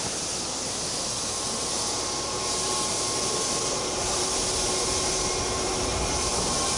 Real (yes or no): no